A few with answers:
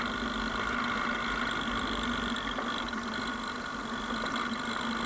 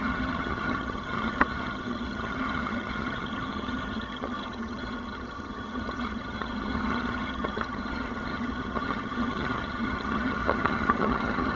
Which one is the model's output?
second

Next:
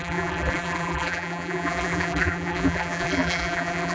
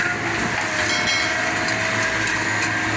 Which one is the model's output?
first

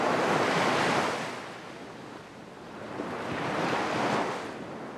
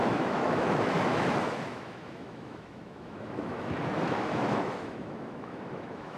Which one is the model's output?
second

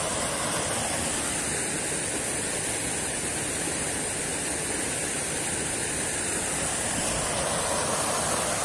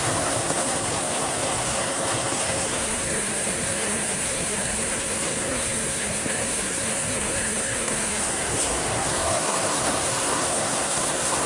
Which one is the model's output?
second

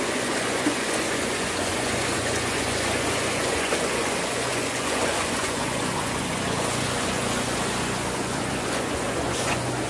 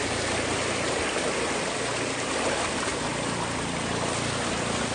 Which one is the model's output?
first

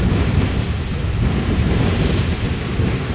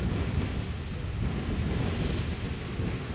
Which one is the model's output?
first